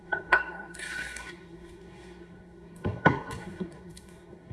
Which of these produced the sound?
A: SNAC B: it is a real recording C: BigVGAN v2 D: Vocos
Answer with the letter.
A